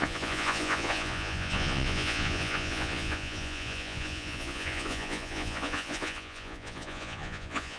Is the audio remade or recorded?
remade